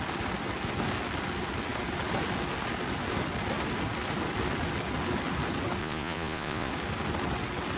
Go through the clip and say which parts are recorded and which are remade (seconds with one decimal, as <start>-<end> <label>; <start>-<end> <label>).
0.0-5.8 recorded; 5.8-6.7 remade; 6.7-7.8 recorded